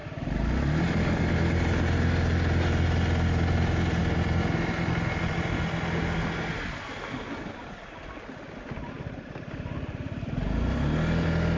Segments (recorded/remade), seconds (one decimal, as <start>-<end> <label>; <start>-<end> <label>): 0.0-0.8 remade; 0.8-4.0 recorded; 4.0-7.0 remade; 7.0-11.6 recorded

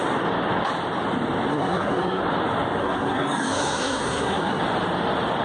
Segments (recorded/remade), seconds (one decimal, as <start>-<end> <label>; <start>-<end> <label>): 0.0-1.5 recorded; 1.5-2.2 remade; 2.2-2.8 recorded; 2.8-4.6 remade; 4.6-5.4 recorded

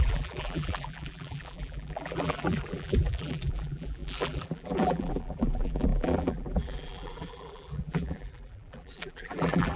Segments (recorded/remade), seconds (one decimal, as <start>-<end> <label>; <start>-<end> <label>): 0.0-9.8 remade

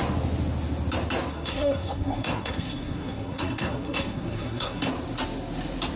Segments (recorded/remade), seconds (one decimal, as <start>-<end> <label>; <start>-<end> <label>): 0.0-1.3 recorded; 1.3-4.9 remade; 4.9-6.0 recorded